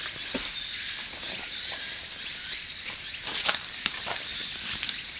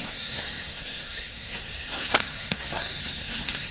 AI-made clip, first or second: second